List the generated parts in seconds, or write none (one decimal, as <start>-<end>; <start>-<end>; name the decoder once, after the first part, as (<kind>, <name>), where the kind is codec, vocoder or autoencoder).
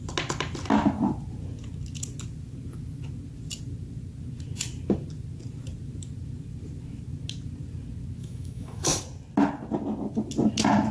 8.2-9.0 (autoencoder, DAC-VAE)